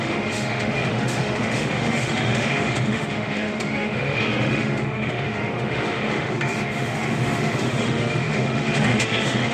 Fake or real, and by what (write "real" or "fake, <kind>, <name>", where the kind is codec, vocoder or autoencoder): fake, autoencoder, DAC-VAE